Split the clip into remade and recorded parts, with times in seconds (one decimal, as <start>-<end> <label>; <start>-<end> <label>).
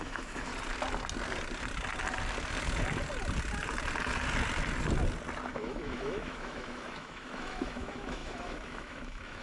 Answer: 0.0-0.5 remade; 0.5-5.5 recorded; 5.5-9.4 remade